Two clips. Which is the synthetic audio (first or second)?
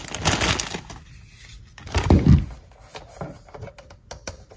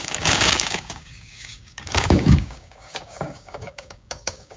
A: second